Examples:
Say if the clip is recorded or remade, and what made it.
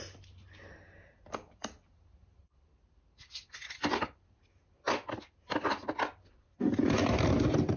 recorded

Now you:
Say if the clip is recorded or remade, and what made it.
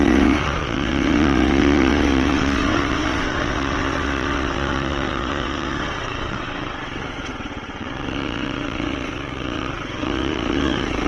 remade, vocoder, WaveNeXt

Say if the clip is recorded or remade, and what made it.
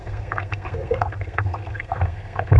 remade, codec, SNAC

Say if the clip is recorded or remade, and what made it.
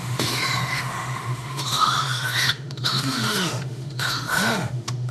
remade, autoencoder, DAC-VAE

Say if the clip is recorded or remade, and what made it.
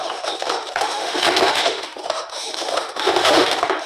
remade, autoencoder, DAC-VAE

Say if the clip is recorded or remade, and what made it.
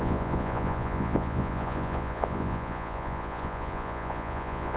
remade, vocoder, Vocos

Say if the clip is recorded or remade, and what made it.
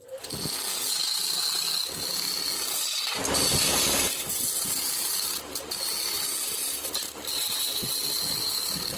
recorded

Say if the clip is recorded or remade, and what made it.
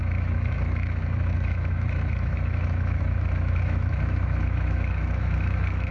remade, autoencoder, DAC-VAE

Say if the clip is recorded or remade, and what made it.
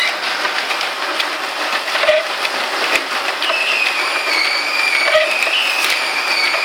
recorded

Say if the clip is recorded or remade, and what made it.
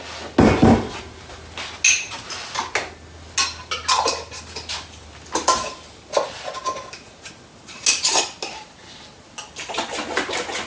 recorded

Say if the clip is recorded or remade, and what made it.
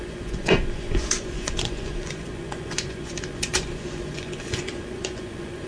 remade, vocoder, Vocos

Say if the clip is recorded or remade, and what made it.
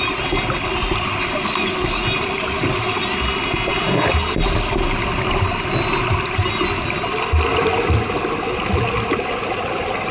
recorded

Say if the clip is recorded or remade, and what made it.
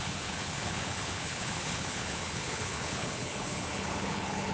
remade, codec, HILCodec